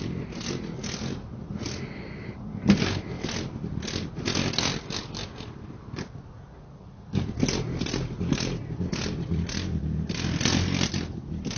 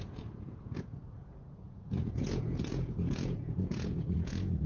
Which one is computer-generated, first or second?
second